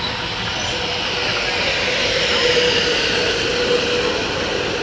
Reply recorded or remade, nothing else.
recorded